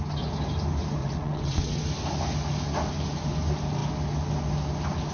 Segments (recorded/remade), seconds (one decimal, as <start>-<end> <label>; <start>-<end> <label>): 0.0-1.0 recorded; 1.0-1.8 remade; 1.8-5.1 recorded